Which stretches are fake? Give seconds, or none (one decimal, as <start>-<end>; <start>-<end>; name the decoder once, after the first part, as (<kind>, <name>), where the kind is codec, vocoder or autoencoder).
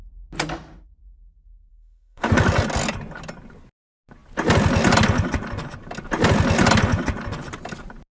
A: 1.7-2.3 (autoencoder, DAC-VAE)